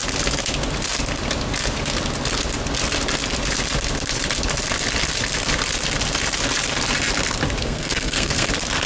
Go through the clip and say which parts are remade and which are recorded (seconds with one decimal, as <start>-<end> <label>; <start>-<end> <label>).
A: 0.0-7.6 recorded; 7.6-8.5 remade; 8.5-8.9 recorded

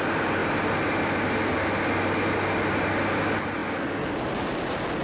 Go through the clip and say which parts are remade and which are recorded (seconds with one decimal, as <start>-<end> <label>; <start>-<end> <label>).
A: 0.0-5.0 recorded

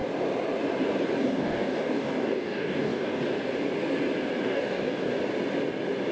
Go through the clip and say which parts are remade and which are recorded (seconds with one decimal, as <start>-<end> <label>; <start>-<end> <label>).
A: 0.0-1.2 recorded; 1.2-3.2 remade; 3.2-4.4 recorded; 4.4-5.1 remade; 5.1-6.1 recorded

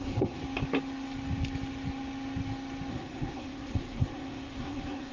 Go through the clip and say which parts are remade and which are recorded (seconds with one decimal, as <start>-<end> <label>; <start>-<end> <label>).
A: 0.0-0.4 remade; 0.4-2.9 recorded; 2.9-5.1 remade

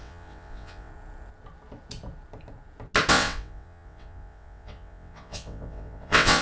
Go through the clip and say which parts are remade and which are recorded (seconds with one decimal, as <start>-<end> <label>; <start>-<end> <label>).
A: 0.0-0.9 remade; 0.9-3.1 recorded; 3.1-6.4 remade